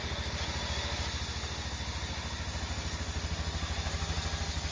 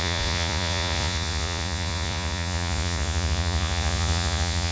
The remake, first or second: second